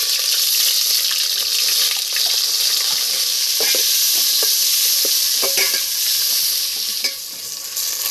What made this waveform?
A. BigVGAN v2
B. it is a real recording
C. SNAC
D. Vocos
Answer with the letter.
B